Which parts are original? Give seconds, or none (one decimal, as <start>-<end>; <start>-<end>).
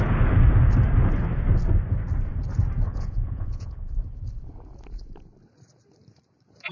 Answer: 0.0-2.9; 4.0-6.7